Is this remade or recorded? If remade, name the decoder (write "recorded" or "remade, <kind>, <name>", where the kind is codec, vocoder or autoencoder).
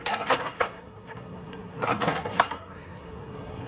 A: remade, codec, SNAC